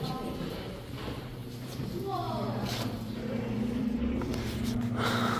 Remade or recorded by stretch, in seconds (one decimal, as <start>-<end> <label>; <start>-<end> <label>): 0.0-1.4 recorded; 1.4-4.2 remade; 4.2-5.4 recorded